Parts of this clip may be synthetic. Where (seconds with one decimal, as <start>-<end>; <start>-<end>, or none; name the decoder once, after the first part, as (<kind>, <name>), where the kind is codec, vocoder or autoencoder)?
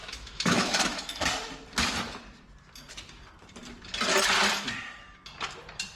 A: 0.0-1.3 (autoencoder, DAC-VAE)